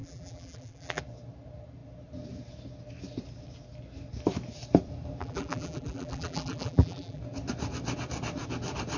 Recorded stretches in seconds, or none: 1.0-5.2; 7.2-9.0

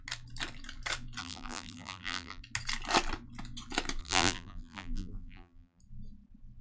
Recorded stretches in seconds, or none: 0.0-1.2; 2.4-4.0; 5.8-6.6

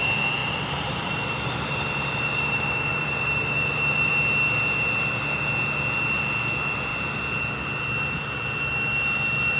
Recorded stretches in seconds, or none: 0.0-0.4; 4.1-9.6

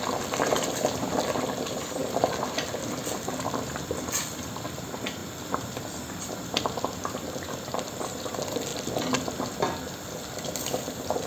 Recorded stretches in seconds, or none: 2.0-3.3; 8.7-9.4

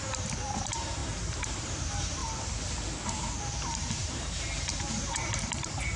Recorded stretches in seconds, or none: 2.2-3.6

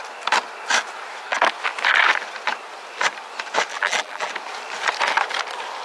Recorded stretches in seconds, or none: 0.0-3.7; 4.3-5.8

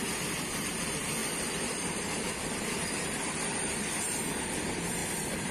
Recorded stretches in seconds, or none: 0.0-1.2; 4.5-5.0

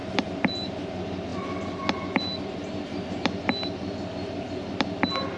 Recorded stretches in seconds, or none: 0.7-5.4